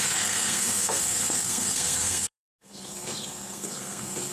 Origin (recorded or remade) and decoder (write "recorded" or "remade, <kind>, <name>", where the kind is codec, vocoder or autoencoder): remade, codec, SNAC